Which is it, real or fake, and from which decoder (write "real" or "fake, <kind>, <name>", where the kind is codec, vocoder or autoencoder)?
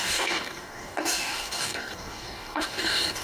fake, codec, DAC